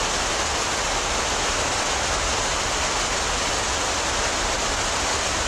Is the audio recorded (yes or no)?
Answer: yes